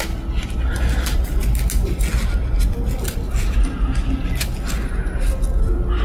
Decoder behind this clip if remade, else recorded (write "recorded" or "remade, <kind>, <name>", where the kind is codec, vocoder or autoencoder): recorded